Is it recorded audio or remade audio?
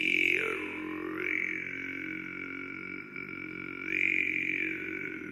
recorded